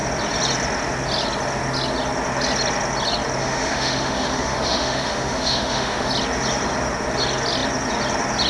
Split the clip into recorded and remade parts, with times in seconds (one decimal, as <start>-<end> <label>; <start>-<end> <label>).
0.0-3.4 recorded; 3.4-6.1 remade; 6.1-8.5 recorded